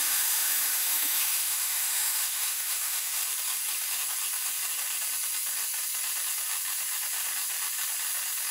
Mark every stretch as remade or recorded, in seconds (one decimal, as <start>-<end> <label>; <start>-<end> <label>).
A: 0.0-3.2 remade; 3.2-8.5 recorded